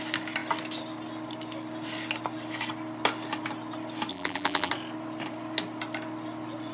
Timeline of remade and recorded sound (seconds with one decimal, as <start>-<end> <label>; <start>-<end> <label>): 0.0-4.1 recorded; 4.1-4.7 remade; 4.7-6.7 recorded